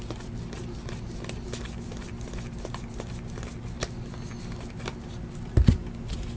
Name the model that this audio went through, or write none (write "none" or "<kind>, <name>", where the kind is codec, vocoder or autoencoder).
none